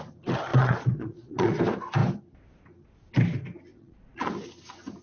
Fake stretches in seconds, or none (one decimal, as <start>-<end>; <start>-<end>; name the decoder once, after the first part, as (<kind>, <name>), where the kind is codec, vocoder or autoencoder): 0.5-1.6 (vocoder, Vocos); 3.7-4.3